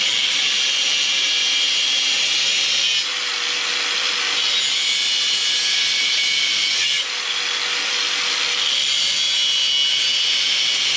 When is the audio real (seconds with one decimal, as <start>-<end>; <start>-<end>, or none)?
0.0-11.0